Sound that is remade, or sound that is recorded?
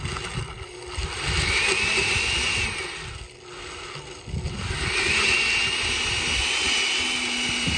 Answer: recorded